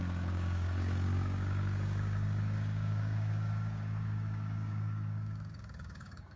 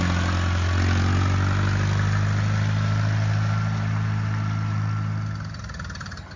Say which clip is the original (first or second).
second